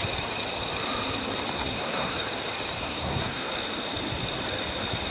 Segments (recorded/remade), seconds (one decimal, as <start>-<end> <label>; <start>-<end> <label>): 0.0-1.5 recorded; 1.5-2.1 remade; 2.1-2.8 recorded; 2.8-3.5 remade; 3.5-5.1 recorded